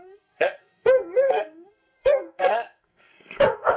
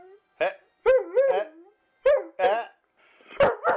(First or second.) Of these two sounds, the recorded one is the second